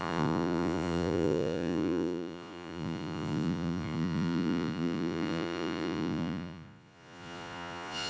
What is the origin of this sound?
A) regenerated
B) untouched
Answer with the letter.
A